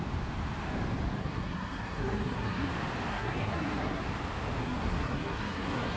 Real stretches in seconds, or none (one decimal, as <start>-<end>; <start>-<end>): 0.0-1.2; 2.7-3.1; 4.0-4.6